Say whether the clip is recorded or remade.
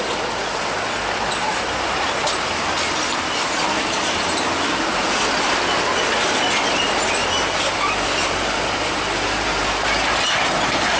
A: recorded